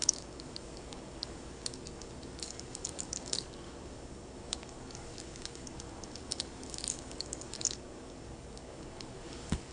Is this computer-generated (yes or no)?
yes